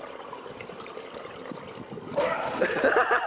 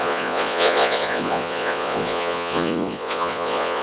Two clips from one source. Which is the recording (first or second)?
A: first